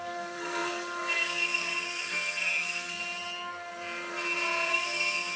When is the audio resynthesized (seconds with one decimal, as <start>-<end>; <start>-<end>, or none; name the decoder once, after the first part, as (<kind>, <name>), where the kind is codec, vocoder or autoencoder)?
0.0-3.0 (codec, SNAC); 4.7-5.4